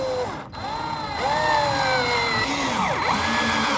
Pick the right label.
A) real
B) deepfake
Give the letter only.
A